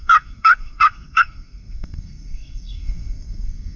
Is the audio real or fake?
fake